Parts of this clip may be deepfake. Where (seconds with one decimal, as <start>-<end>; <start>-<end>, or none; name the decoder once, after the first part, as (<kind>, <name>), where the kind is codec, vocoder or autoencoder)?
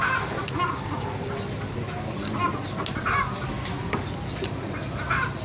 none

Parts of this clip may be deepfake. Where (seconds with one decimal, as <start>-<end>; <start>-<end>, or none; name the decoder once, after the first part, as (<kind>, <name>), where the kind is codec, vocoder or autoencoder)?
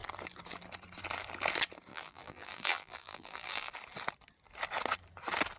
1.9-3.7 (vocoder, BigVGAN v2)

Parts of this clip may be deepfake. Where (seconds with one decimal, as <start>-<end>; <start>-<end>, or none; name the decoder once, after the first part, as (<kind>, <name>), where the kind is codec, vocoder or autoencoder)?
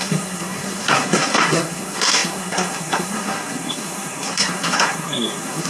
0.0-5.7 (codec, SNAC)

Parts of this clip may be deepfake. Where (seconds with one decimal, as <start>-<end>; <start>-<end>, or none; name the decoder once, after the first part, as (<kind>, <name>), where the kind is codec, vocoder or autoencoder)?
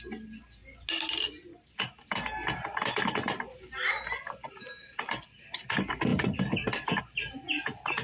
none